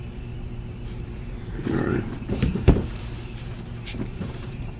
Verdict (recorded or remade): remade